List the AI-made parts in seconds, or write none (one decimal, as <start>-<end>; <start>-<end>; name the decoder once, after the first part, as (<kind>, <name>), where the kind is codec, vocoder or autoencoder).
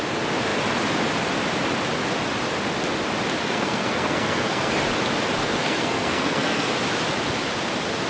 3.4-4.7 (codec, SNAC); 5.4-6.7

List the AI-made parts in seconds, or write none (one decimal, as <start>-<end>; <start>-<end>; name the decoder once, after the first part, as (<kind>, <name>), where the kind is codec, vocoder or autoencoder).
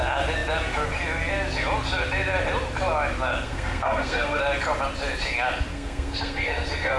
3.3-4.4 (codec, SNAC); 5.7-7.0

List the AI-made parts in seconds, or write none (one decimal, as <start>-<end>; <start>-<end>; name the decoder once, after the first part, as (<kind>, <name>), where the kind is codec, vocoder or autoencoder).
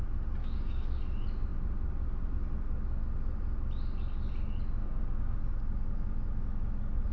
0.4-1.0 (codec, DAC); 4.8-5.4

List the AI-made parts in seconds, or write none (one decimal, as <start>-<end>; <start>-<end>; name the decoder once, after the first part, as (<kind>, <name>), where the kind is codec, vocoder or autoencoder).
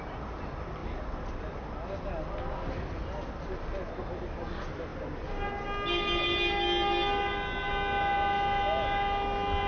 none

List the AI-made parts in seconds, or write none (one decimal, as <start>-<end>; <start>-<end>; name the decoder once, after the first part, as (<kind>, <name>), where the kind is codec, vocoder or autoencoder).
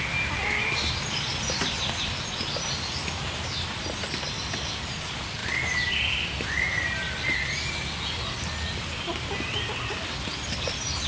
none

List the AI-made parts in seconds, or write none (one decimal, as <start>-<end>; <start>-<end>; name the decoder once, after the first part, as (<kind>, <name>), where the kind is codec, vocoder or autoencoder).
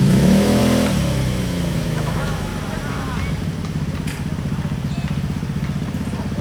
0.0-0.6 (autoencoder, DAC-VAE); 1.4-2.5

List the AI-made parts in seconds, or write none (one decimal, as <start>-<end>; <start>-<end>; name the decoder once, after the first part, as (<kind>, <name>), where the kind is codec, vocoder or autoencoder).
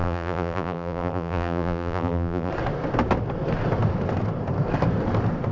0.0-2.5 (vocoder, BigVGAN v2)